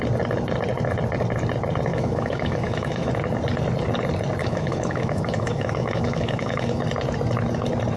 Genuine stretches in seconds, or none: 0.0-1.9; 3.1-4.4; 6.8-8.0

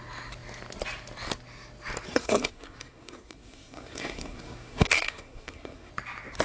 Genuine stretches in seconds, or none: 0.0-2.1; 5.9-6.4

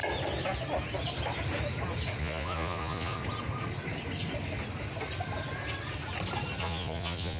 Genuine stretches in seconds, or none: 0.0-2.2; 3.2-6.6

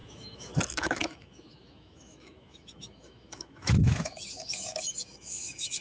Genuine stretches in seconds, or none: none